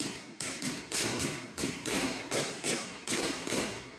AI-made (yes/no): yes